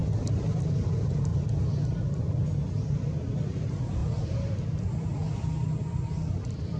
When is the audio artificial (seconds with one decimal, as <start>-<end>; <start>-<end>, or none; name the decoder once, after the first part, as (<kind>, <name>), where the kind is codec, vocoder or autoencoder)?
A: 0.0-1.3 (vocoder, BigVGAN v2); 3.5-6.8